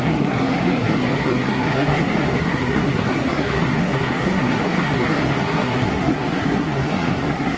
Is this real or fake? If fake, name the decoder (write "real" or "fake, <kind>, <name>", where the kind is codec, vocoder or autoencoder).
fake, codec, SNAC